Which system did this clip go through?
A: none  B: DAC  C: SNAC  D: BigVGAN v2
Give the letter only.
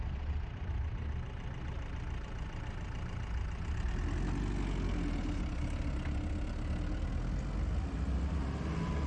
A